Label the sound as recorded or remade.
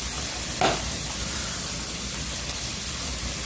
recorded